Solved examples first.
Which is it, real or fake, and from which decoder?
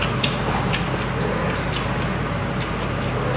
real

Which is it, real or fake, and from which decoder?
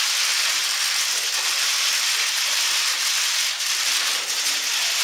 real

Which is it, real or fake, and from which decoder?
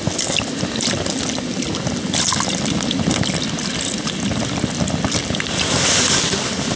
real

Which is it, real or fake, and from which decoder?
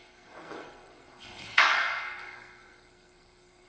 fake, codec, SNAC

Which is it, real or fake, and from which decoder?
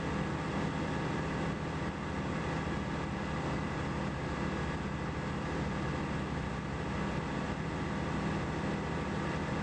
real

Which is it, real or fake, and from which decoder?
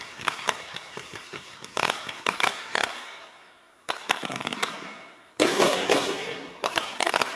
fake, codec, SNAC